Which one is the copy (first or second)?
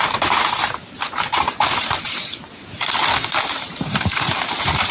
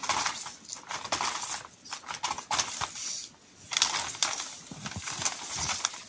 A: first